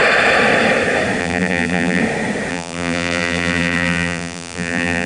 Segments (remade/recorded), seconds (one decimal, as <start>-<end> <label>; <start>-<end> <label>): 0.0-1.2 recorded; 1.2-2.0 remade; 2.0-2.5 recorded; 2.5-5.1 remade

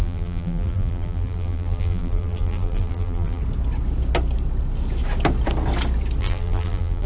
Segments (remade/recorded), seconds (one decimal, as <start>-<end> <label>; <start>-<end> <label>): 0.0-3.4 remade; 3.4-6.2 recorded; 6.2-7.1 remade

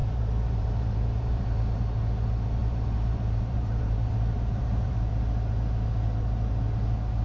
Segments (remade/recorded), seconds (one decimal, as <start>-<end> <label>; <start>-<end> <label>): 0.0-1.8 remade; 1.8-2.6 recorded; 2.6-5.1 remade; 5.1-7.2 recorded

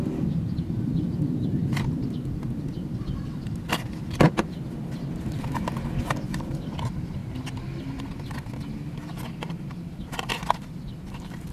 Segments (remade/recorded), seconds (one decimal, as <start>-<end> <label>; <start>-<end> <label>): 0.0-7.2 remade; 7.2-10.3 recorded; 10.3-11.5 remade

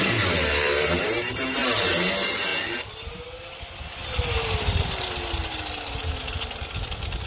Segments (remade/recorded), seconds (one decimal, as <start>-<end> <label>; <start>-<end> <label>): 0.0-2.5 remade; 2.5-7.3 recorded

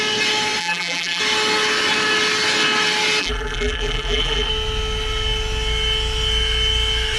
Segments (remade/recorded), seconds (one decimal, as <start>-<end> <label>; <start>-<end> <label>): 0.0-0.6 recorded; 0.6-1.2 remade; 1.2-3.2 recorded; 3.2-4.5 remade; 4.5-7.2 recorded

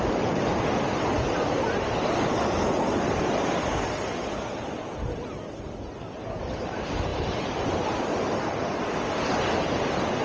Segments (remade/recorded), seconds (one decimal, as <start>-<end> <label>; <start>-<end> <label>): 0.0-7.1 recorded; 7.1-7.7 remade; 7.7-10.2 recorded